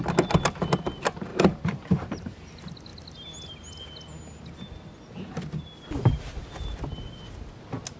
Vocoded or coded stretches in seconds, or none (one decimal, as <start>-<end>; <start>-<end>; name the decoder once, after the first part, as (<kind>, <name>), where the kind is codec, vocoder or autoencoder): 1.3-2.5 (vocoder, BigVGAN v2)